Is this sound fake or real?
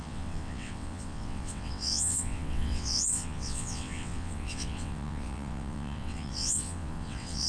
fake